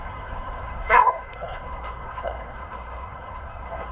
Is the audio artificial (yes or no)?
yes